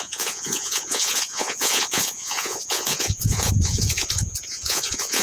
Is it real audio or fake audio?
fake